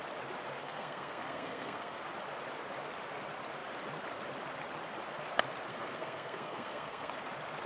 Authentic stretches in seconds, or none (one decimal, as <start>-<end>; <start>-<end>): 0.0-0.6; 2.0-5.7; 7.1-7.7